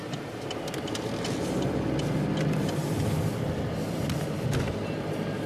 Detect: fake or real real